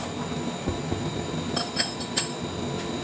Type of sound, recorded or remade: recorded